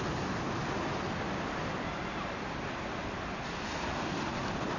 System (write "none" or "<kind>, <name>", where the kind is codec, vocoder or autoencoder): none